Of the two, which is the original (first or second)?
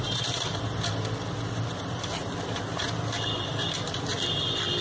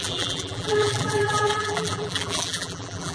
first